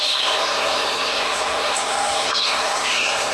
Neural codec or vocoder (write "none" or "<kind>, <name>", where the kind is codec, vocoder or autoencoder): codec, SNAC